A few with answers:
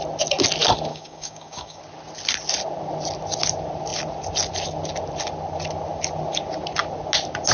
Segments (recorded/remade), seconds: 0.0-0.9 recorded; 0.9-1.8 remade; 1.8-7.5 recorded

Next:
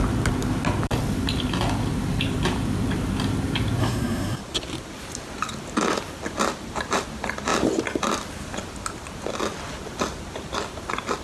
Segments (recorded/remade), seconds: 0.0-3.8 recorded; 3.8-4.4 remade; 4.4-11.2 recorded

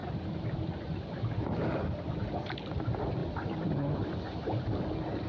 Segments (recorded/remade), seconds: 0.0-2.3 remade; 2.3-3.2 recorded; 3.2-4.2 remade; 4.2-5.3 recorded